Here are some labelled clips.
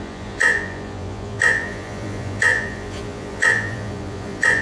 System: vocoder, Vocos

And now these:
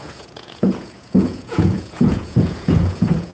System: vocoder, Vocos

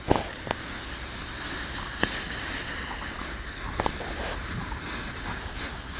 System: none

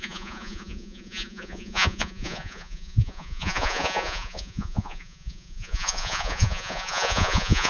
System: vocoder, Vocos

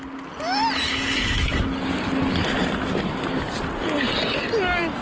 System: none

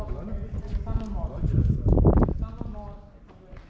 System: none